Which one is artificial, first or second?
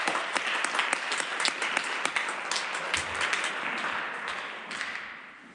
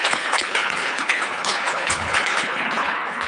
second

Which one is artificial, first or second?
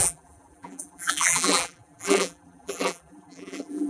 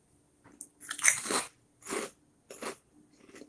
first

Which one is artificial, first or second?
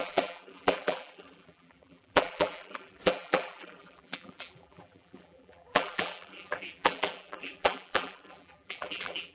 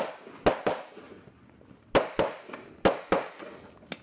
first